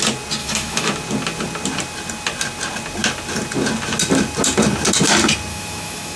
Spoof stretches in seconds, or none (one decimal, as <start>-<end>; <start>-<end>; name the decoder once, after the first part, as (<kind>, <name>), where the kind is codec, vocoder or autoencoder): 0.4-0.9 (autoencoder, DAC-VAE); 5.5-6.2